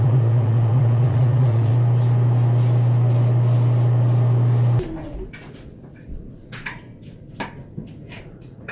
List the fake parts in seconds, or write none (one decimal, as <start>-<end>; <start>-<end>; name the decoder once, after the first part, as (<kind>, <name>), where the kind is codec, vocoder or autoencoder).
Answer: 0.0-1.7 (vocoder, Vocos); 5.3-6.9; 8.2-8.7